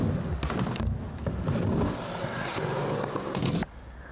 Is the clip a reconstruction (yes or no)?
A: no